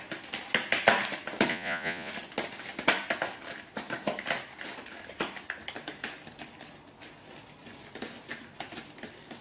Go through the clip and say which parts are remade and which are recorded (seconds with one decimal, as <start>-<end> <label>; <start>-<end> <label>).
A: 0.0-1.5 recorded; 1.5-2.1 remade; 2.1-9.4 recorded